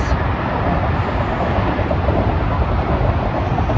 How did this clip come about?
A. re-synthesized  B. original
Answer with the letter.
B